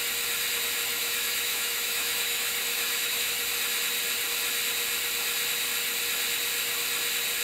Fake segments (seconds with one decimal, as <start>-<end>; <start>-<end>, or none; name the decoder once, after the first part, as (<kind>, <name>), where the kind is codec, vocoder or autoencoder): 0.9-3.4 (autoencoder, DAC-VAE)